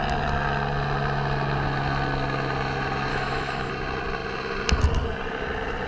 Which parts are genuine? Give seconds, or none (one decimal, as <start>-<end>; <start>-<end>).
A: 0.0-3.1; 3.7-5.9